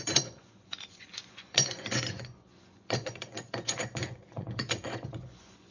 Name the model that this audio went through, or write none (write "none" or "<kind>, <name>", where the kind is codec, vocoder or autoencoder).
vocoder, Vocos